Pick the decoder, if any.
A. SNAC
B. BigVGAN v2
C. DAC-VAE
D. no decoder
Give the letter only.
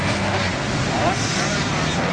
B